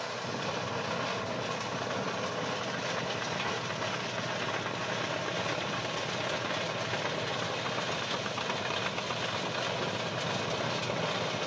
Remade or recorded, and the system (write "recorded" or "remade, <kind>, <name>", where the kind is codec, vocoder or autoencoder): recorded